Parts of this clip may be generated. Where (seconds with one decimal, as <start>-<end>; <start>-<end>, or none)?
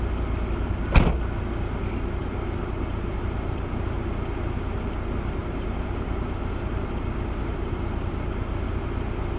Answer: 2.2-3.7; 5.4-8.1